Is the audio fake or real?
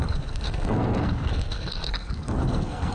fake